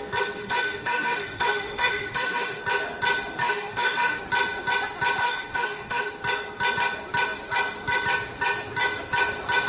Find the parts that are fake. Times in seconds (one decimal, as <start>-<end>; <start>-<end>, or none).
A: 0.4-2.6; 3.4-4.2; 5.2-6.1

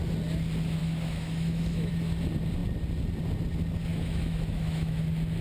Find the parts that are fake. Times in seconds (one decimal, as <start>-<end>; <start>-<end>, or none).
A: 0.8-1.9; 3.9-5.0